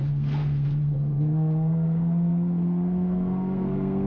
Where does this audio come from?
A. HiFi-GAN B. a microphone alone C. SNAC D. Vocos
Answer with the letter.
C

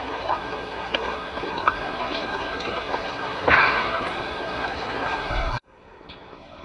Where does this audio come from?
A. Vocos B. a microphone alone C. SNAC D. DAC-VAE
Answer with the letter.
C